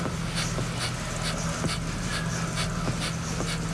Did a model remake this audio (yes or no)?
no